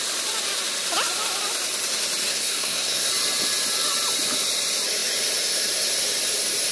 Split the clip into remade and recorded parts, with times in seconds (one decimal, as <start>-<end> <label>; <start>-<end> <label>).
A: 0.0-2.3 recorded; 2.3-3.1 remade; 3.1-6.7 recorded